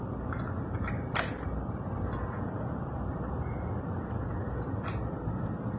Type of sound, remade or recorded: recorded